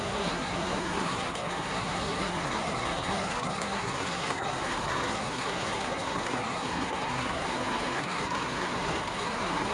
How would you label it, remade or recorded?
remade